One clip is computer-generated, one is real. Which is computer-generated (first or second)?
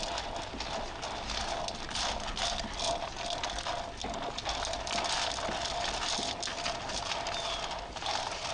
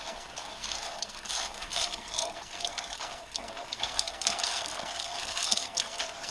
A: second